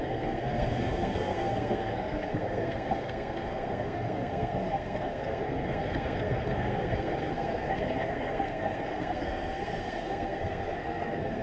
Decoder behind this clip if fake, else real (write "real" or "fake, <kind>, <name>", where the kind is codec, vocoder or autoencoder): fake, codec, SNAC